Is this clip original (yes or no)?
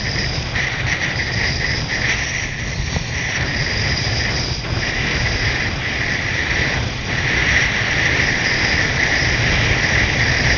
no